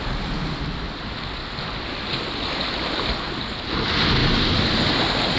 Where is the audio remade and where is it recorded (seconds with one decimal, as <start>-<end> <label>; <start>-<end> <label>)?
0.0-5.4 recorded